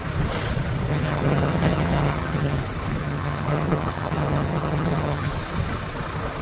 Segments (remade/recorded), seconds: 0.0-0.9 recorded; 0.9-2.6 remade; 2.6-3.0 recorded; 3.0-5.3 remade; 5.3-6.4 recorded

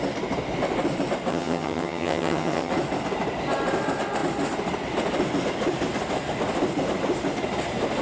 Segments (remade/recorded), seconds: 0.0-1.3 recorded; 1.3-2.7 remade; 2.7-8.0 recorded

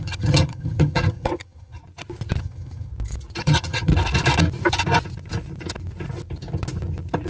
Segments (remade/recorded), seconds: 0.0-1.8 remade; 1.8-2.4 recorded; 2.4-2.9 remade; 2.9-3.4 recorded; 3.4-3.9 remade; 3.9-7.3 recorded

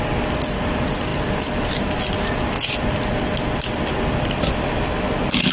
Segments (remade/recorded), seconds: 0.0-5.5 recorded

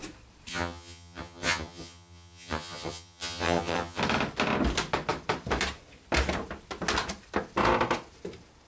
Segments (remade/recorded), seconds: 0.0-0.5 recorded; 0.5-4.0 remade; 4.0-8.7 recorded